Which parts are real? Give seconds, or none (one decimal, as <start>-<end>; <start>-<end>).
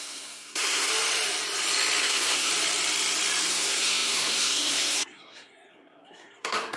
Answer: 0.9-2.0; 2.5-3.5